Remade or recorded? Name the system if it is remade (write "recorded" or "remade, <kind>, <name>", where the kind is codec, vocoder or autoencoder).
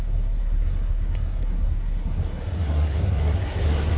remade, codec, SNAC